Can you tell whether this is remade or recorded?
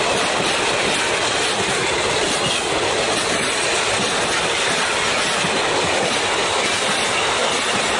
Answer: recorded